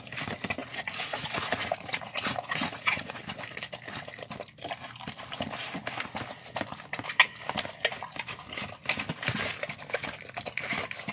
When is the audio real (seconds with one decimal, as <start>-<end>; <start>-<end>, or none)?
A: 0.0-0.6; 3.2-11.1